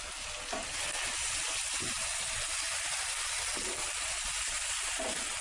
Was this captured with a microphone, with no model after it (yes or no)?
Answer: yes